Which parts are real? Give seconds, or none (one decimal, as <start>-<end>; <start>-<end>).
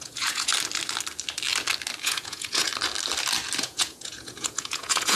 0.5-2.0; 2.7-3.6